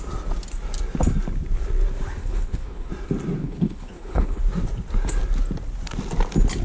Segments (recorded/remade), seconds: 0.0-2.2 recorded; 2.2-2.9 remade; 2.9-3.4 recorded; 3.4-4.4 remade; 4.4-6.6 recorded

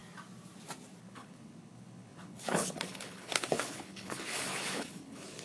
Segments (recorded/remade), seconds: 0.0-1.0 recorded; 1.0-5.4 remade

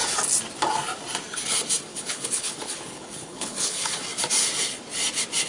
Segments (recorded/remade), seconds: 0.0-1.9 recorded; 1.9-4.0 remade; 4.0-5.5 recorded

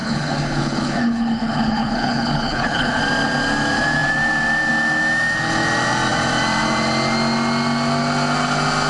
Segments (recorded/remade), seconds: 0.0-3.0 remade; 3.0-8.9 recorded

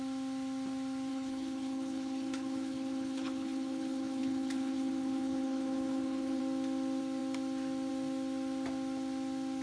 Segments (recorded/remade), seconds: 0.0-1.1 recorded; 1.1-6.4 remade; 6.4-9.6 recorded